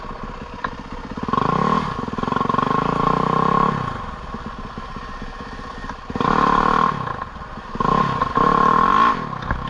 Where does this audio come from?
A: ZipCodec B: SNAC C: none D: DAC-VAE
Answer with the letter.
C